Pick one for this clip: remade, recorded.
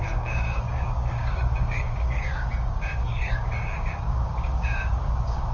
remade